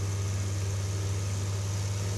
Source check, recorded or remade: recorded